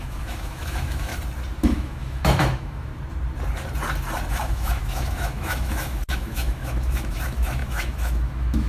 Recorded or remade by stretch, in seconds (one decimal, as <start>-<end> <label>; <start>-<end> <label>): 0.0-1.1 remade; 1.1-1.6 recorded; 1.6-2.9 remade; 2.9-4.3 recorded; 4.3-8.7 remade